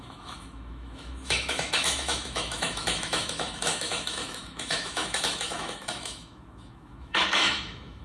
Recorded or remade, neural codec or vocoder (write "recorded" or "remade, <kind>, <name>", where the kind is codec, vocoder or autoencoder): remade, autoencoder, DAC-VAE